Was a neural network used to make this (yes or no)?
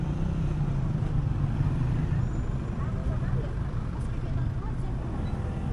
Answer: no